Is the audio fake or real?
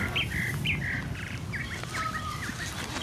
real